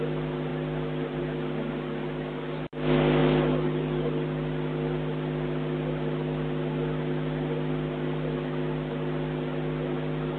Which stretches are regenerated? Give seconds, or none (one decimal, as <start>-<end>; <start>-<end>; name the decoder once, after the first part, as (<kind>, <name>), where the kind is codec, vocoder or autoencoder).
none